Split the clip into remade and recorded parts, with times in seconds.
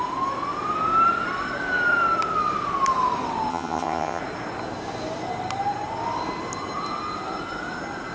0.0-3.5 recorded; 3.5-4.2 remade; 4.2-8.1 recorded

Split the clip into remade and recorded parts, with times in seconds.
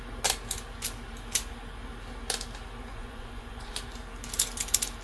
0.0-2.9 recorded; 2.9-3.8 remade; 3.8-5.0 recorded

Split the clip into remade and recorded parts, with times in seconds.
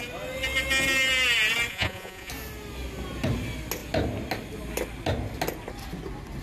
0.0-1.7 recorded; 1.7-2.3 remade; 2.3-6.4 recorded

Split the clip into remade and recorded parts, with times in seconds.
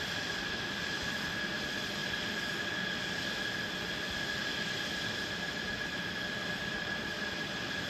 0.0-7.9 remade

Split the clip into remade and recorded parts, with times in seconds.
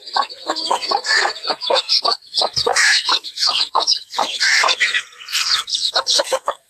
0.0-6.7 remade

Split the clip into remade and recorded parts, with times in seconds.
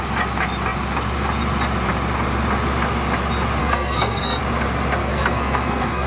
0.0-3.6 recorded; 3.6-4.4 remade; 4.4-5.0 recorded; 5.0-6.1 remade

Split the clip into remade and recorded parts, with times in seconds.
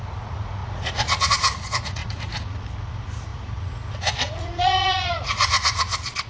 0.0-6.3 remade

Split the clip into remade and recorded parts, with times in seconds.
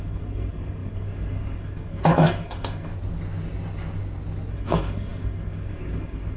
0.0-2.9 remade; 2.9-4.5 recorded; 4.5-6.4 remade